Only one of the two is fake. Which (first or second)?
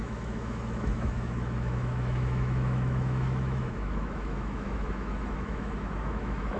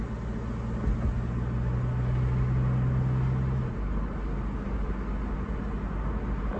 first